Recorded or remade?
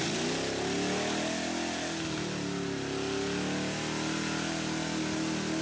recorded